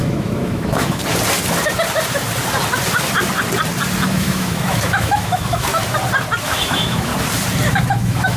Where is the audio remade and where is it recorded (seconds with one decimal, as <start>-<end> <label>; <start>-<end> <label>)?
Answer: 0.0-1.0 remade; 1.0-4.1 recorded; 4.1-5.7 remade; 5.7-6.4 recorded; 6.4-7.1 remade; 7.1-7.9 recorded; 7.9-8.4 remade